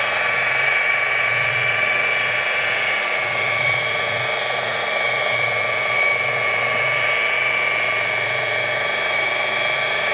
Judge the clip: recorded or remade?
remade